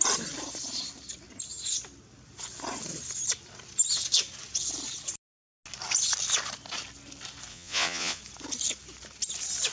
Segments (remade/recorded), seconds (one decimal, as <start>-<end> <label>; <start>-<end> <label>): 0.0-7.5 recorded; 7.5-8.2 remade; 8.2-9.7 recorded